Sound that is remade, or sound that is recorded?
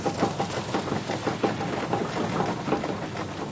recorded